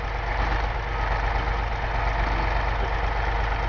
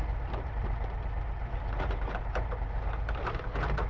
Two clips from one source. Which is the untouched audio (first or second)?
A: first